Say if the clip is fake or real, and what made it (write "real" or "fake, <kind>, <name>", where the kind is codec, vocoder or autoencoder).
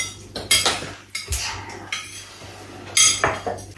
real